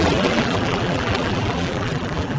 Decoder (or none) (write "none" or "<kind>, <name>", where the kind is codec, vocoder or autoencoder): vocoder, BigVGAN v2